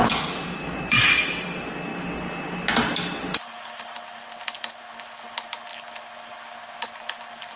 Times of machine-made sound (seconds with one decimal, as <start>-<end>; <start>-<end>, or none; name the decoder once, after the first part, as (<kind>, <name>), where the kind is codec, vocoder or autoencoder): 0.6-5.7 (vocoder, BigVGAN v2)